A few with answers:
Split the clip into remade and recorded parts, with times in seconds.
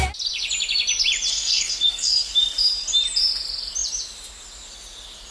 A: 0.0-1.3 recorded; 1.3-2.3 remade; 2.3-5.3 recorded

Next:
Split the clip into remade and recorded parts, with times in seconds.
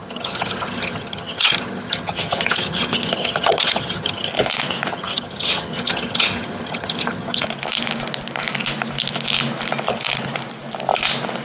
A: 0.0-4.3 remade; 4.3-4.9 recorded; 4.9-7.4 remade; 7.4-11.4 recorded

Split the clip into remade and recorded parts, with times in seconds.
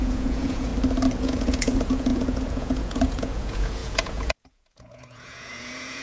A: 0.0-0.7 remade; 0.7-1.2 recorded; 1.2-6.0 remade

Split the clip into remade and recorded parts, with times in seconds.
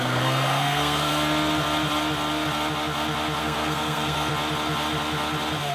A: 0.0-1.1 remade; 1.1-3.4 recorded; 3.4-4.3 remade; 4.3-5.7 recorded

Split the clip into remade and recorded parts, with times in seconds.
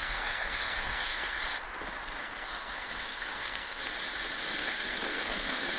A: 0.0-1.4 remade; 1.4-2.2 recorded; 2.2-3.8 remade; 3.8-4.6 recorded; 4.6-5.8 remade